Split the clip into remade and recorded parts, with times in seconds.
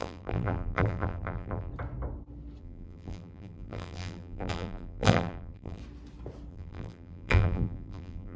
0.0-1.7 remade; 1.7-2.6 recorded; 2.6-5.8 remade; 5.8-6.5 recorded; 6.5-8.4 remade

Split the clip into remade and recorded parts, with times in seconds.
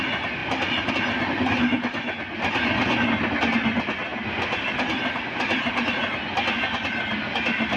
0.0-7.8 recorded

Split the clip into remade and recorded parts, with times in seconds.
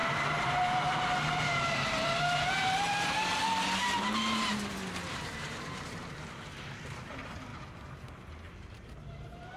0.0-9.6 remade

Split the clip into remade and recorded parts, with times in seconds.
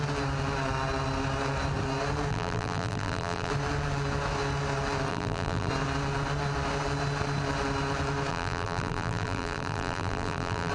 0.0-2.3 recorded; 2.3-3.5 remade; 3.5-5.1 recorded; 5.1-5.7 remade; 5.7-8.3 recorded; 8.3-10.7 remade